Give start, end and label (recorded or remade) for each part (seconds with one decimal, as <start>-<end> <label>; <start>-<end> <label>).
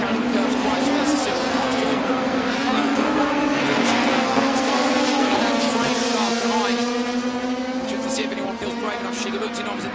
0.0-1.5 recorded; 1.5-5.4 remade; 5.4-9.9 recorded